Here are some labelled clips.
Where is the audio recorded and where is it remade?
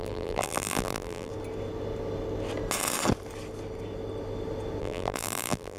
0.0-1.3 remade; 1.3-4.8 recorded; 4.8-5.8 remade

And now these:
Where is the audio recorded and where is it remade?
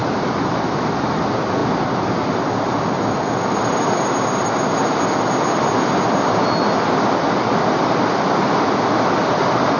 0.0-1.2 remade; 1.2-9.8 recorded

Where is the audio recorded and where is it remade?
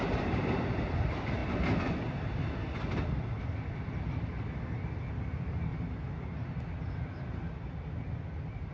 0.0-8.7 recorded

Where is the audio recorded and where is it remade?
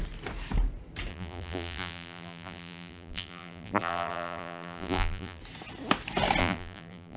0.0-1.1 recorded; 1.1-5.4 remade; 5.4-6.4 recorded; 6.4-7.2 remade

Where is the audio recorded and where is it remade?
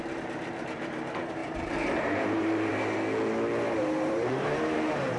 0.0-2.7 remade; 2.7-3.8 recorded; 3.8-5.2 remade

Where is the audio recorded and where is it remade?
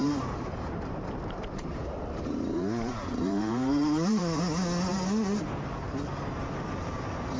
0.0-4.4 remade; 4.4-4.9 recorded; 4.9-6.9 remade; 6.9-7.4 recorded